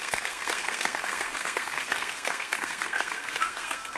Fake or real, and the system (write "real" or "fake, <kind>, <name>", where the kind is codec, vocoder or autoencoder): fake, codec, SNAC